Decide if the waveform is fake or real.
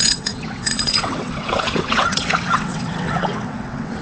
fake